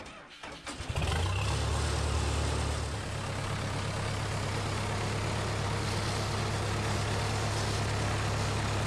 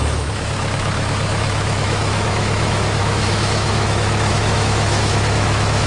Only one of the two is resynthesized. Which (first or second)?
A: second